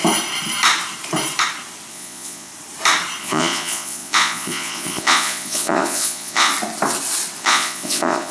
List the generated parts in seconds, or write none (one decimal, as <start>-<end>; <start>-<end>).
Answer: 1.9-2.5; 3.2-6.5; 7.4-8.3